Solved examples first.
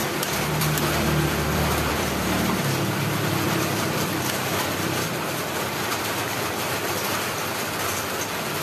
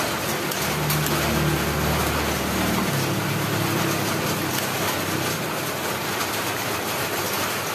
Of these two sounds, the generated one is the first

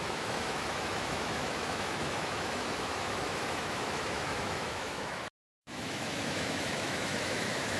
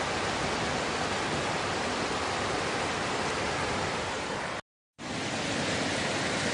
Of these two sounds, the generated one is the first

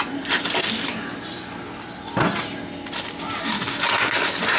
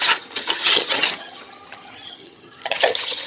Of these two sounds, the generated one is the second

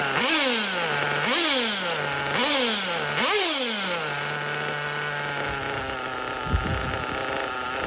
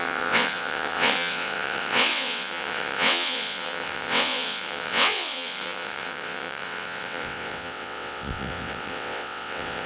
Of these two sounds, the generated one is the second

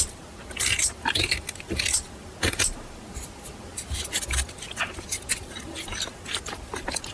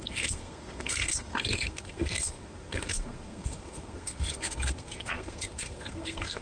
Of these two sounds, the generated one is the second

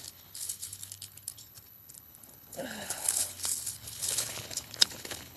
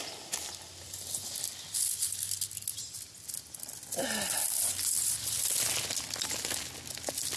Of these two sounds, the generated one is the first